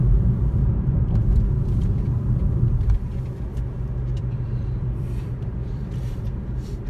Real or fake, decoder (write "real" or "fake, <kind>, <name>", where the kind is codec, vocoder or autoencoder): fake, vocoder, BigVGAN v2